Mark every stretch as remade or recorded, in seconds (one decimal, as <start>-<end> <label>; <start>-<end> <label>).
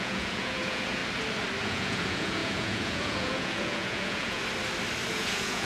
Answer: 0.0-1.0 remade; 1.0-1.6 recorded; 1.6-4.4 remade; 4.4-5.1 recorded; 5.1-5.7 remade